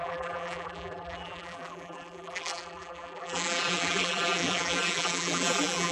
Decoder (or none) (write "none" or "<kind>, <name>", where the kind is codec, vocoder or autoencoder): vocoder, BigVGAN v2